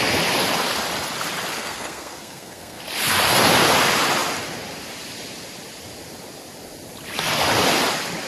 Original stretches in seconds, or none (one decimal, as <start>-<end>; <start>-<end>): 0.0-1.6; 2.8-8.3